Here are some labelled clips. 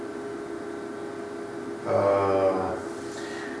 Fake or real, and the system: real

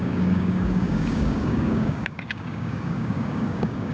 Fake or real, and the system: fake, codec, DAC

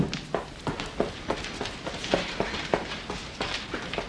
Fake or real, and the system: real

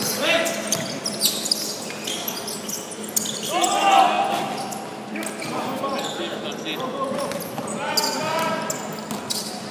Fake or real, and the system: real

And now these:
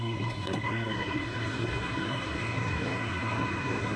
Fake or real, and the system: fake, codec, SNAC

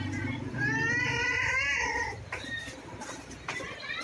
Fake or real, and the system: real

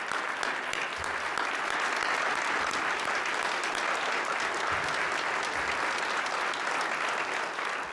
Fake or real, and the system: real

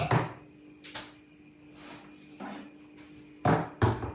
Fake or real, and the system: real